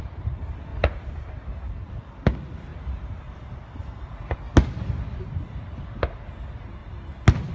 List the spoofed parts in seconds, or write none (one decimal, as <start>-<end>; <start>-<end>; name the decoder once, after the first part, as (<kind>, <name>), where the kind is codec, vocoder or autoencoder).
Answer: none